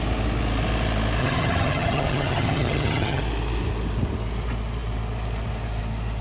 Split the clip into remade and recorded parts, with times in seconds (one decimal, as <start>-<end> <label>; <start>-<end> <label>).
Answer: 0.0-1.2 recorded; 1.2-3.2 remade; 3.2-6.2 recorded